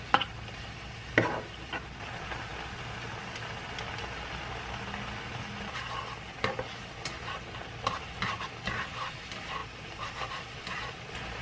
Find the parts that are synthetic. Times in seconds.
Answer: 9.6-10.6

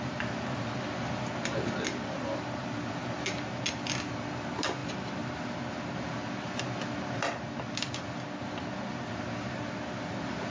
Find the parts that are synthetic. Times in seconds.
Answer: none

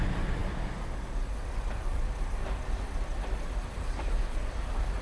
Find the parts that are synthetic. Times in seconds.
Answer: none

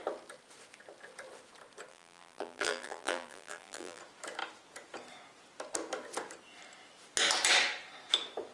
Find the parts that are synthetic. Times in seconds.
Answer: 1.9-4.0

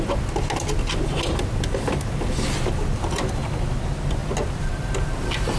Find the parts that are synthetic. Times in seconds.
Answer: none

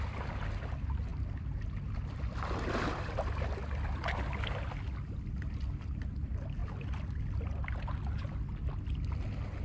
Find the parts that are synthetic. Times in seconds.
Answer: none

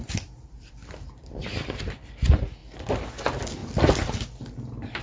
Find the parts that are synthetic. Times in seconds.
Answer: 0.0-1.4; 2.2-2.6; 3.2-3.6; 4.4-5.0

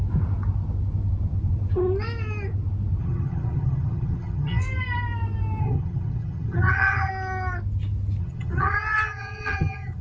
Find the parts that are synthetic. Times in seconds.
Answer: 3.0-4.6; 5.6-7.1; 8.2-10.0